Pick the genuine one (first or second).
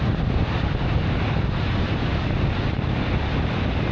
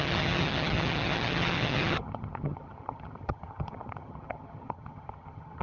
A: first